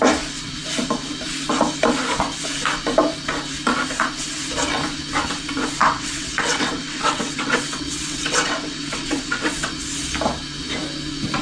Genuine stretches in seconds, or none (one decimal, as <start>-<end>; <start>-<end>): 0.0-5.8; 9.7-11.4